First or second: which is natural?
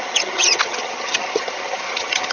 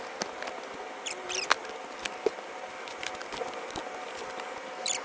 second